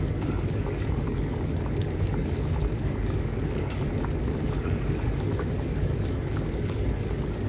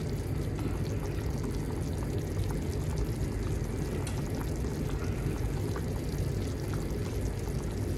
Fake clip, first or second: first